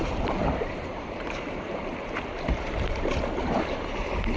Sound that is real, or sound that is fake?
fake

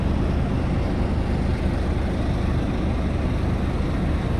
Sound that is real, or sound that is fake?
real